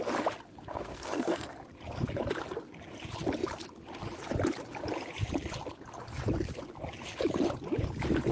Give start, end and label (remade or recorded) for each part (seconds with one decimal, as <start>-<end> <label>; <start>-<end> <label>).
0.0-0.7 recorded; 0.7-1.5 remade; 1.5-8.3 recorded